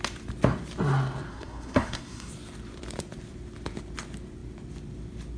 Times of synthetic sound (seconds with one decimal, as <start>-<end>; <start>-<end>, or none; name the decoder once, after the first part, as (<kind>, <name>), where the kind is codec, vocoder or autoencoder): 1.3-2.3 (codec, SNAC)